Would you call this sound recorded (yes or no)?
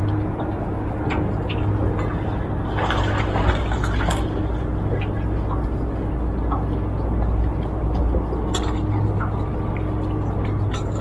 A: yes